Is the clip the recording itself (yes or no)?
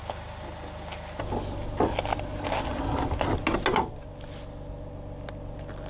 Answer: yes